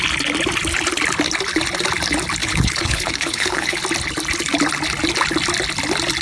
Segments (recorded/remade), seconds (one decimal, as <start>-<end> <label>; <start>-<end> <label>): 0.0-2.4 recorded; 2.4-3.8 remade; 3.8-6.2 recorded